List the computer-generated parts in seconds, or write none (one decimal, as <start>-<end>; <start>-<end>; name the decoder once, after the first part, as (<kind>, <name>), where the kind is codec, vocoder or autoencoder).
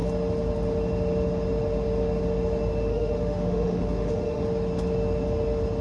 2.9-4.4 (autoencoder, DAC-VAE)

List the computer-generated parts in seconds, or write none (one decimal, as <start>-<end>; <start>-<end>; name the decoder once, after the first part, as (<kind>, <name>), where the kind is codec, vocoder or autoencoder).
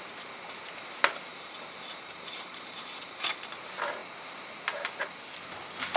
1.3-3.5 (vocoder, BigVGAN v2)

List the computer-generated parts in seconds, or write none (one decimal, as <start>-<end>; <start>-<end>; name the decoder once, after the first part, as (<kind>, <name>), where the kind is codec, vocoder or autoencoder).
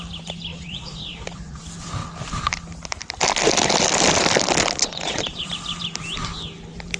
0.5-1.6 (vocoder, Vocos); 4.8-5.5